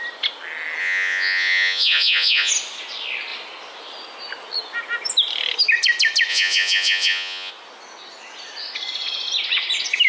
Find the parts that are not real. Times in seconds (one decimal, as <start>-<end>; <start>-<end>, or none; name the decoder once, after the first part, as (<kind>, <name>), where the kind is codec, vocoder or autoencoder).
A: 0.8-2.5 (vocoder, Vocos); 6.3-7.5